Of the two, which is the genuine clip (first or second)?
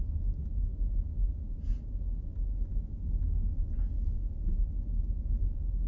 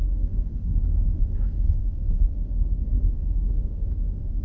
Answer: first